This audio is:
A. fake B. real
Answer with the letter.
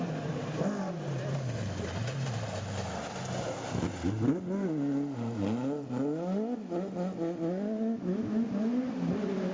B